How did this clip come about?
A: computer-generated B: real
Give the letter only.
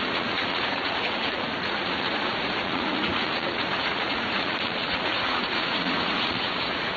A